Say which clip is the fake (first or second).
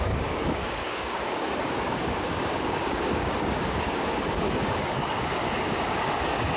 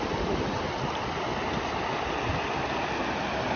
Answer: first